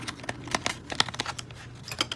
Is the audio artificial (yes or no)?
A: no